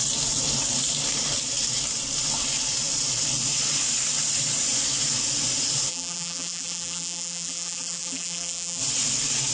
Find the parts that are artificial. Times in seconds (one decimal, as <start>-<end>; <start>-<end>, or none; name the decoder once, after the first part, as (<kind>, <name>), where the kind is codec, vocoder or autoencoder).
5.9-8.8 (vocoder, BigVGAN v2)